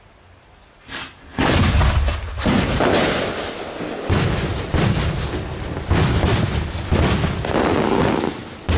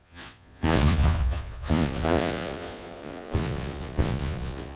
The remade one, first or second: second